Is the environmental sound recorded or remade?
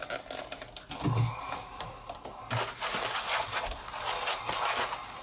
recorded